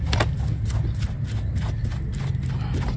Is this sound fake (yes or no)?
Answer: no